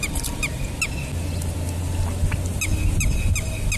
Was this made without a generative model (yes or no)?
yes